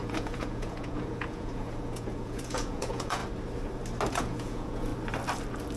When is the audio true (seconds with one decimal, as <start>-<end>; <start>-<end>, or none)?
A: 3.2-4.1; 4.9-5.8